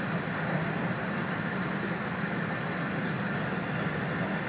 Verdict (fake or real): real